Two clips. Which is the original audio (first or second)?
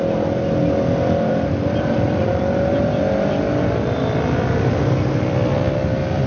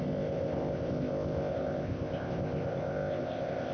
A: first